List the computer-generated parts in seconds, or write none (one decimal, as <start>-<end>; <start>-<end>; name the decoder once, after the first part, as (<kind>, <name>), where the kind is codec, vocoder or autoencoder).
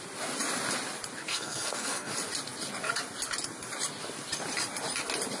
1.3-2.1 (codec, SNAC)